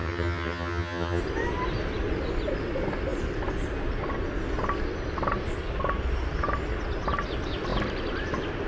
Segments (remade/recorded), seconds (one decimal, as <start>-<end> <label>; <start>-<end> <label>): 0.0-1.2 remade; 1.2-8.7 recorded